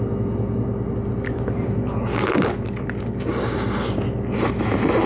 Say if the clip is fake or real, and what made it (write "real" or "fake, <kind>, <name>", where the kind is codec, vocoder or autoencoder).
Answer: real